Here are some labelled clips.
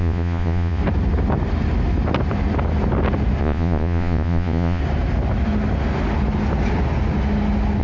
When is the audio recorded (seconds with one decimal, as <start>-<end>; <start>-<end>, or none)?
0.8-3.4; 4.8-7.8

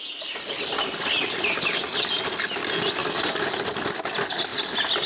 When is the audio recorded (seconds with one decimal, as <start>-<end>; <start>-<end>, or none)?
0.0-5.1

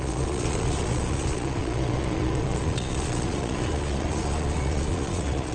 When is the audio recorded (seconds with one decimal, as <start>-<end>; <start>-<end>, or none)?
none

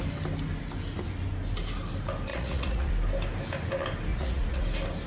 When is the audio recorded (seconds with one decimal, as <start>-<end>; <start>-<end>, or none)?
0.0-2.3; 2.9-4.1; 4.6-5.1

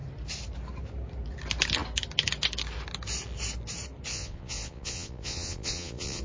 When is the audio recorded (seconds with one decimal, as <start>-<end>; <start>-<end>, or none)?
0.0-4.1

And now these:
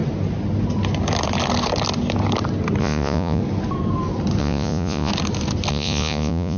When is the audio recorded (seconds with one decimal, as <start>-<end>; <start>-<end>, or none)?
0.0-2.8; 3.4-4.4; 5.1-5.7

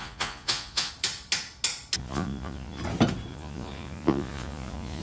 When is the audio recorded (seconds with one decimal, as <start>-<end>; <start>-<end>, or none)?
0.9-2.0; 2.8-3.3

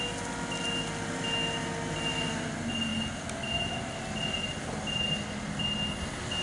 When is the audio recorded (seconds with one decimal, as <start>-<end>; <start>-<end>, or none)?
0.0-6.4